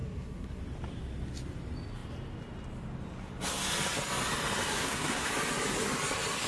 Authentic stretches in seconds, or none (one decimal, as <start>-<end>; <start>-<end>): 0.6-4.7; 5.3-6.5